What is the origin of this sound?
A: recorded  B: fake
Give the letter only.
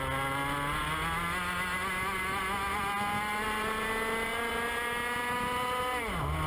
A